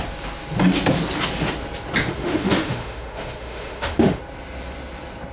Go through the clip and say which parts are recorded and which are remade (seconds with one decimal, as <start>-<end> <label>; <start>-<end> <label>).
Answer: 0.0-2.0 recorded; 2.0-4.2 remade; 4.2-5.3 recorded